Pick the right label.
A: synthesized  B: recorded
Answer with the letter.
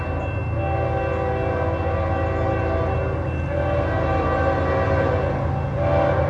B